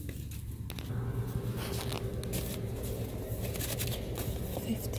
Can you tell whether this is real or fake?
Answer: real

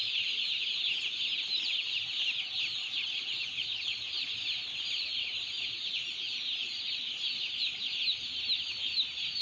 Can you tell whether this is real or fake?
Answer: real